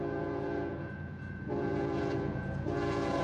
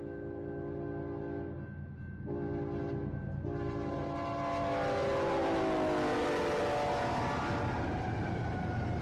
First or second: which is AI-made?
first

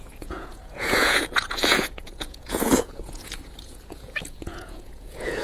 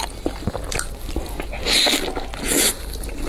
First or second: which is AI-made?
first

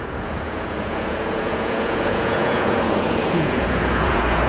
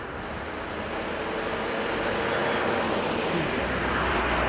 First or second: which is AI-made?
first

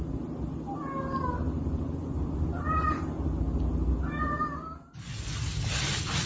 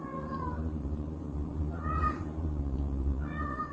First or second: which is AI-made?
second